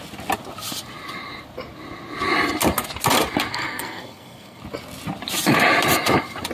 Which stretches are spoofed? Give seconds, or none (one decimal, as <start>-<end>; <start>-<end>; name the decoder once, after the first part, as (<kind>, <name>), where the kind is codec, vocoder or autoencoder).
3.5-4.6 (codec, SNAC)